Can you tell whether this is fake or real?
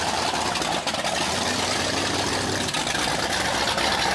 real